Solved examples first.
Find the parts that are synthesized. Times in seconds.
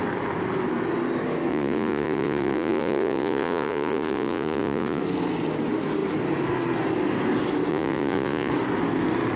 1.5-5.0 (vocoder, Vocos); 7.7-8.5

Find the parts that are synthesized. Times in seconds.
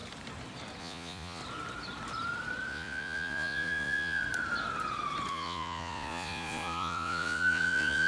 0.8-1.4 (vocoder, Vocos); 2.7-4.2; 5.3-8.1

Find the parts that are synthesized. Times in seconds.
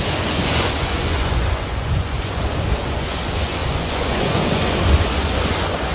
0.0-5.9 (vocoder, Vocos)